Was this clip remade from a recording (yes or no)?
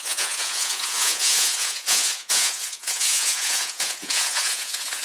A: yes